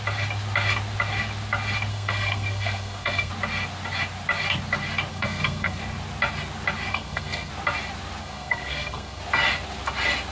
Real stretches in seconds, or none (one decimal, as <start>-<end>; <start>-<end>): 0.0-1.9; 3.3-5.1; 5.8-6.9; 7.5-8.2; 9.2-10.3